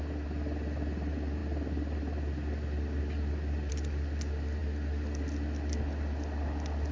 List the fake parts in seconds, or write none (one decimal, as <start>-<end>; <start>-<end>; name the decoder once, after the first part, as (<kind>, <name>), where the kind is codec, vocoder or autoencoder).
none